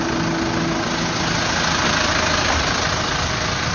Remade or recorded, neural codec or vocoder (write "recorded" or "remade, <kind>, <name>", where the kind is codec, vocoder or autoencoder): recorded